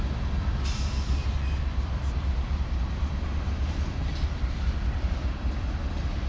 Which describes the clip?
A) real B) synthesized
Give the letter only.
A